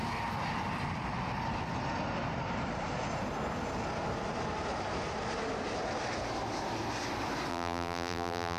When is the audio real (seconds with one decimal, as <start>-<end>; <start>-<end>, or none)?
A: 0.0-7.5